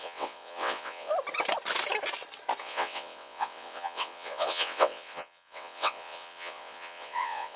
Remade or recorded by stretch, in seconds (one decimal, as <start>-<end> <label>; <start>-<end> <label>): 0.0-1.1 remade; 1.1-2.6 recorded; 2.6-7.6 remade

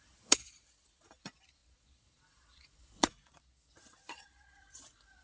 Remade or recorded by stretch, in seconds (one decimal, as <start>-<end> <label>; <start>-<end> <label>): 0.0-5.2 remade

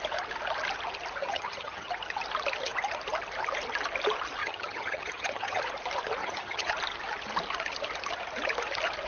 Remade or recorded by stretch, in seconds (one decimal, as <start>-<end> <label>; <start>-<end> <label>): 0.0-1.2 recorded; 1.2-1.9 remade; 1.9-4.4 recorded; 4.4-5.6 remade; 5.6-6.2 recorded; 6.2-6.7 remade; 6.7-9.1 recorded

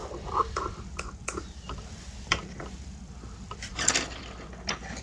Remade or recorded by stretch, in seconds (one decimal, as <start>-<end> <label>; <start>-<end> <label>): 0.0-0.6 remade; 0.6-1.2 recorded; 1.2-4.2 remade; 4.2-5.0 recorded

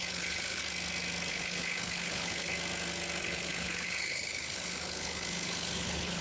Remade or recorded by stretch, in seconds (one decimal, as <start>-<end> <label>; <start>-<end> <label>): 0.0-0.6 remade; 0.6-1.3 recorded; 1.3-2.5 remade; 2.5-3.2 recorded; 3.2-6.2 remade

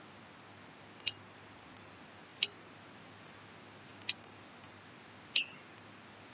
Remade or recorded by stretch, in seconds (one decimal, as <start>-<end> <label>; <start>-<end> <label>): 0.0-6.3 recorded

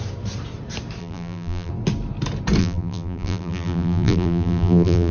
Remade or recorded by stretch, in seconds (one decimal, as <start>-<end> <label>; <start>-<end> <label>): 0.0-1.0 recorded; 1.0-1.7 remade; 1.7-2.6 recorded; 2.6-5.1 remade